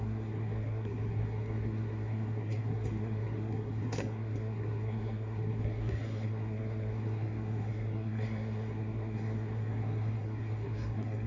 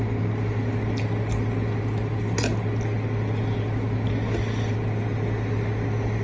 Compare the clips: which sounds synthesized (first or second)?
first